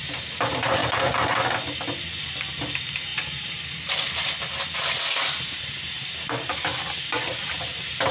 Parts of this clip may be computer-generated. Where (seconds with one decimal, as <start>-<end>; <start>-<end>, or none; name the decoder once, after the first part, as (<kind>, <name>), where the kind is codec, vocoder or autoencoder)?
0.0-0.8 (vocoder, BigVGAN v2); 2.2-8.1